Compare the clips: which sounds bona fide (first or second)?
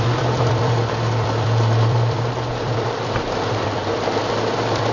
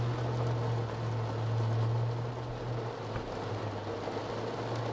second